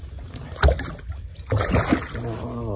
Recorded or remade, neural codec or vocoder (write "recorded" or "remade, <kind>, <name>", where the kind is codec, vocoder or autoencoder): recorded